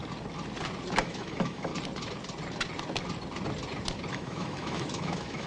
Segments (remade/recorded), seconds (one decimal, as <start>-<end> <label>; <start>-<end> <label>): 0.0-1.0 recorded; 1.0-1.7 remade; 1.7-4.1 recorded; 4.1-5.5 remade